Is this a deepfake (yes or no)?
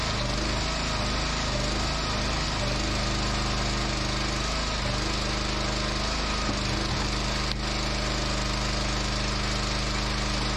no